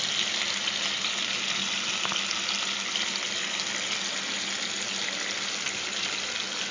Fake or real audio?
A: real